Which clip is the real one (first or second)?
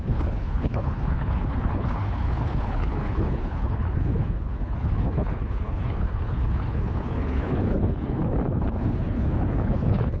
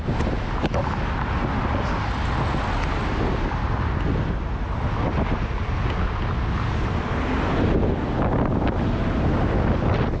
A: second